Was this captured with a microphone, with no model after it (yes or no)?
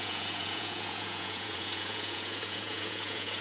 no